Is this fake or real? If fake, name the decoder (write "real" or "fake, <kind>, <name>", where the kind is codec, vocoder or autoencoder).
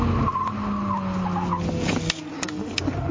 real